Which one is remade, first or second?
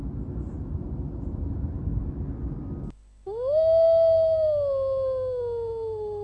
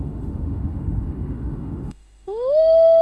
second